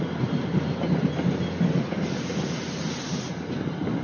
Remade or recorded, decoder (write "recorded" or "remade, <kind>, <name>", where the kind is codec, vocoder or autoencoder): recorded